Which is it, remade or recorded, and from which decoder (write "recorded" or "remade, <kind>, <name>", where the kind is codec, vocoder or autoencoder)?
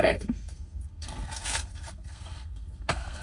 remade, codec, SNAC